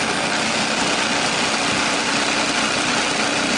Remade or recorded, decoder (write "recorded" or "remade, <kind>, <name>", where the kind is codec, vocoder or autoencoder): recorded